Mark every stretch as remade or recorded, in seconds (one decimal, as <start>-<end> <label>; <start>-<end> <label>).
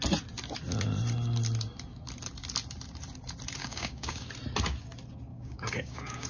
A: 0.0-3.6 recorded; 3.6-4.3 remade; 4.3-5.3 recorded; 5.3-6.3 remade